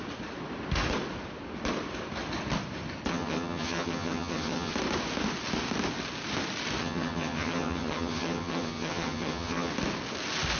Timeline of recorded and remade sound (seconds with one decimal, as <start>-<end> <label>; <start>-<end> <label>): 0.0-3.1 recorded; 3.1-4.7 remade; 4.7-6.8 recorded; 6.8-9.7 remade; 9.7-10.6 recorded